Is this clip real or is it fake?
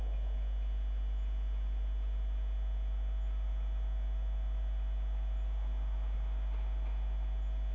real